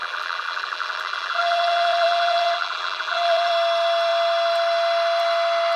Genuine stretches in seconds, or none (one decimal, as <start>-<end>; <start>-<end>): 3.5-5.8